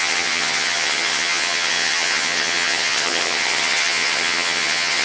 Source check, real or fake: fake